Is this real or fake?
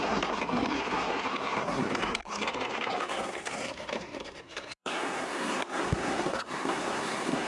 fake